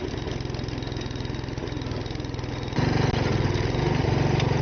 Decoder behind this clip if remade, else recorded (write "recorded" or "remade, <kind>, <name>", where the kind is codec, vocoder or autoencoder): recorded